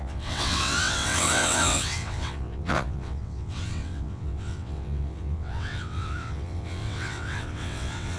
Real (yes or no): no